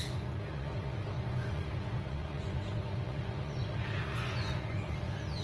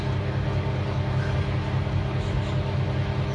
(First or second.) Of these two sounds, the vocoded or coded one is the first